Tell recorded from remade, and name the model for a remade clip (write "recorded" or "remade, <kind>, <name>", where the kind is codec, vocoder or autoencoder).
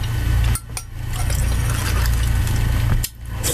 recorded